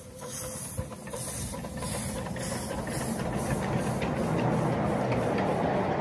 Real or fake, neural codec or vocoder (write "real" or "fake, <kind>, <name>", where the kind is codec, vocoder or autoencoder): real